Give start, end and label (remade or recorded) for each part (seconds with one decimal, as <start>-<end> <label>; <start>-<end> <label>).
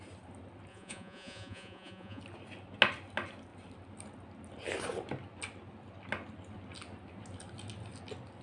0.0-0.7 recorded; 0.7-2.2 remade; 2.2-8.4 recorded